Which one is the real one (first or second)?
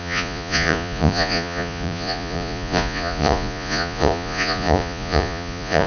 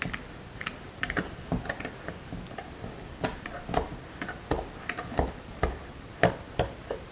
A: second